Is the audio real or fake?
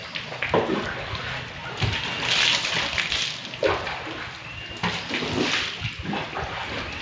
real